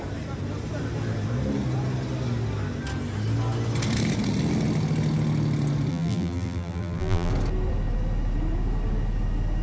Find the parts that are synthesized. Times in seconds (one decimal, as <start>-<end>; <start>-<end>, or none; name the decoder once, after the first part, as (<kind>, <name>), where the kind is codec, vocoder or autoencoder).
5.9-7.3 (vocoder, BigVGAN v2)